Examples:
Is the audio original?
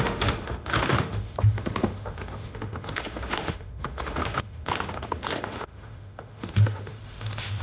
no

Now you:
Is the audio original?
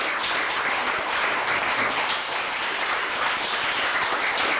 yes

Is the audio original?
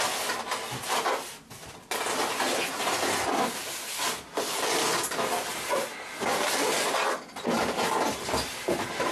yes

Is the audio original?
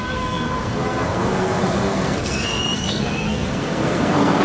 no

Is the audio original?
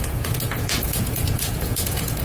no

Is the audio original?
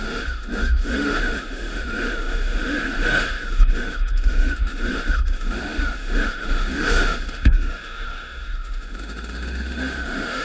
no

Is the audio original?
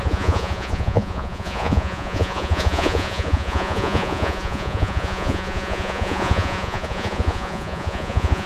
no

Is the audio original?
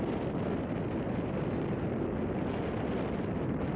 yes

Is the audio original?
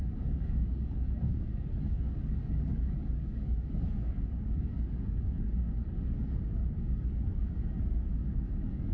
no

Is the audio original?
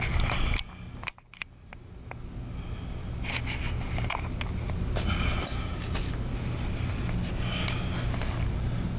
yes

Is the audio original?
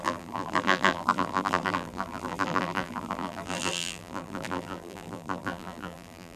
no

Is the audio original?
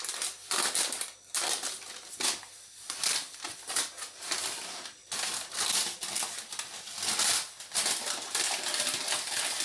yes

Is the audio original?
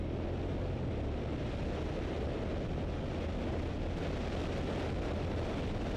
yes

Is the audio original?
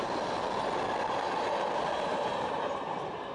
yes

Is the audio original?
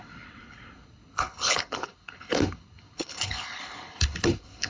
no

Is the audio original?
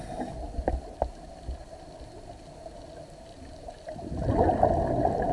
yes